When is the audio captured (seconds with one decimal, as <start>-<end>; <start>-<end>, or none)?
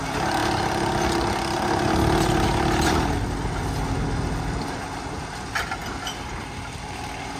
0.0-7.4